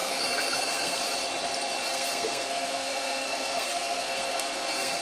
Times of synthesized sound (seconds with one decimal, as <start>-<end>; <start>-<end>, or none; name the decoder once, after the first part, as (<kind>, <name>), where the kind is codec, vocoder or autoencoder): 0.0-1.0 (codec, SNAC); 1.9-5.0